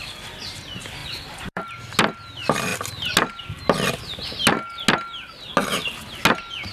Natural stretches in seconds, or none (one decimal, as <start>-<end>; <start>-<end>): 0.0-1.0; 1.7-6.7